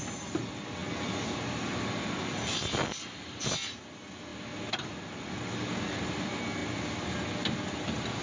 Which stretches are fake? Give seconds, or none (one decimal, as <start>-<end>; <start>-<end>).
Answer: none